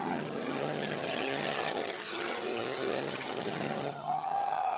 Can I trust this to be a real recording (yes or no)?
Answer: no